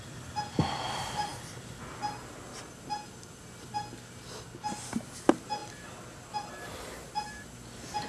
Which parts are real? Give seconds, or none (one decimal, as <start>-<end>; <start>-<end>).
0.0-5.6; 7.5-8.1